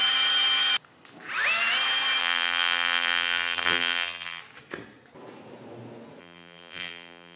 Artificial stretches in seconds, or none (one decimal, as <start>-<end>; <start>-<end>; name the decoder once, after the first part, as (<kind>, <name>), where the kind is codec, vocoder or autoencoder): 2.2-4.4 (vocoder, BigVGAN v2); 6.2-7.4

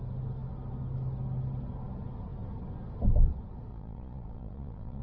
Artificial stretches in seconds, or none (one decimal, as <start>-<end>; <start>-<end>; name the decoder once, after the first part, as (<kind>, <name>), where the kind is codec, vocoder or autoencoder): 3.7-5.0 (vocoder, Vocos)

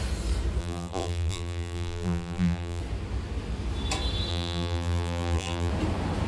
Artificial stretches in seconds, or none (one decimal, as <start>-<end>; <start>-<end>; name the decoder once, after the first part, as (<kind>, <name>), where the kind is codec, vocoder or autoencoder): 0.6-2.8 (vocoder, BigVGAN v2); 4.3-5.7

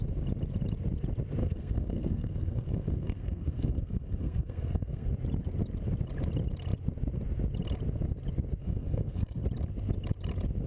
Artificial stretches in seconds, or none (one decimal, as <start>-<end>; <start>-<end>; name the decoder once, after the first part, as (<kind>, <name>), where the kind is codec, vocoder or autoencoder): 1.4-5.1 (codec, SNAC); 8.6-9.4

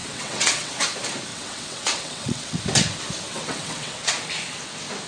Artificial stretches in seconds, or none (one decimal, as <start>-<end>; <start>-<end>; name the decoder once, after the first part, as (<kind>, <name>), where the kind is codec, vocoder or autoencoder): 0.0-0.7 (vocoder, WaveNeXt); 1.3-2.6; 3.3-4.1

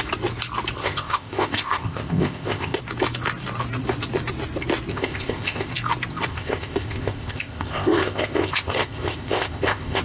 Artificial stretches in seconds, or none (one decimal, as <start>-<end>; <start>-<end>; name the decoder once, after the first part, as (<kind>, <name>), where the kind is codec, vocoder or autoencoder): 0.8-2.8 (codec, ZipCodec); 4.9-5.7; 6.3-10.0

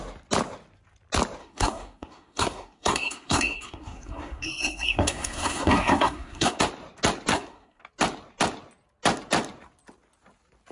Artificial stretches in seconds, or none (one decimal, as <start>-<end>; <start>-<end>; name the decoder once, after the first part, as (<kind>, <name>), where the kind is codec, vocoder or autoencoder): 1.4-6.6 (codec, SNAC); 7.3-7.8